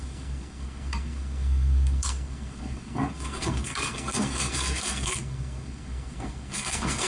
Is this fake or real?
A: fake